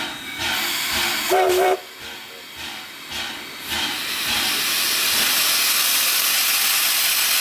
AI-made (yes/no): no